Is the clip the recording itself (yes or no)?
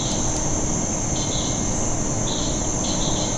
yes